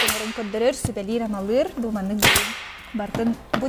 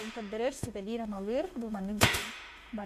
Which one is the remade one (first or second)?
second